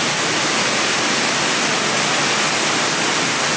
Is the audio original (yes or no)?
yes